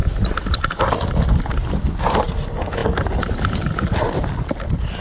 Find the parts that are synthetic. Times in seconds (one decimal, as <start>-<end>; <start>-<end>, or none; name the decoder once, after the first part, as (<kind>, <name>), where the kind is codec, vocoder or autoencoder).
none